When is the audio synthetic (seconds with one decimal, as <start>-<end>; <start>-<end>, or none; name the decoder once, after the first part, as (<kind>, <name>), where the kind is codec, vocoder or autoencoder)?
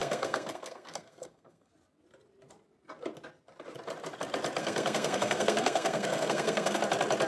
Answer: 0.0-1.7 (codec, SNAC); 4.6-6.8